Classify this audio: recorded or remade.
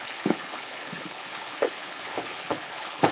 remade